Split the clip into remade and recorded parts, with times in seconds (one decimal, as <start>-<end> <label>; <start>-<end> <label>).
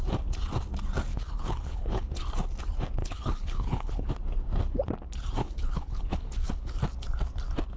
0.0-1.1 recorded; 1.1-2.2 remade; 2.2-3.0 recorded; 3.0-4.1 remade; 4.1-5.4 recorded; 5.4-6.8 remade; 6.8-7.8 recorded